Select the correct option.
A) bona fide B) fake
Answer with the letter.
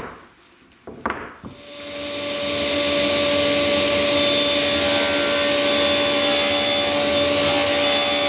A